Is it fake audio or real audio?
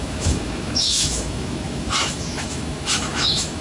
fake